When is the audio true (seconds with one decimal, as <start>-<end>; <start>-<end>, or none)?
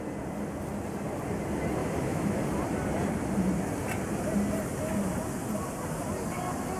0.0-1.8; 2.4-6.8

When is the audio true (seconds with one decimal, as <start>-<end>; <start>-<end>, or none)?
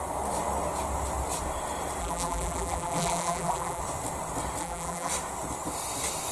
0.0-2.0; 3.8-4.6; 5.1-6.3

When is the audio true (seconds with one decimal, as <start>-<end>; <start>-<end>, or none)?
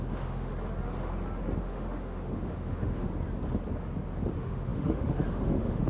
0.5-1.6; 3.1-4.3